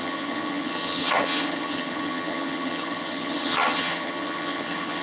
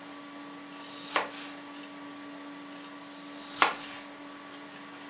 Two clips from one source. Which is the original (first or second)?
second